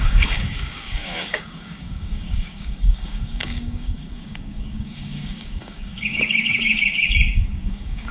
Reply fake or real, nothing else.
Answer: fake